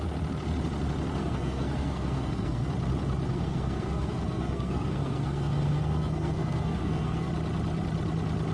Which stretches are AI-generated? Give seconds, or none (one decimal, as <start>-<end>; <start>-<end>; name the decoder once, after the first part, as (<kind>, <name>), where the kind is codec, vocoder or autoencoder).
1.2-2.7 (codec, SNAC); 3.3-7.3